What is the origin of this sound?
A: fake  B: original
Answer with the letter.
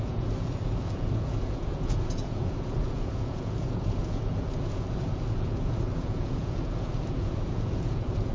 A